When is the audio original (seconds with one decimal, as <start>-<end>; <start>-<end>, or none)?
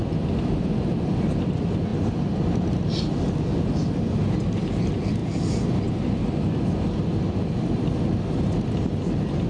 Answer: 0.0-9.5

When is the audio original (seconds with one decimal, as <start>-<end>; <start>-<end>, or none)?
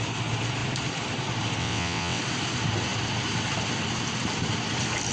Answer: 0.0-1.6; 2.2-5.1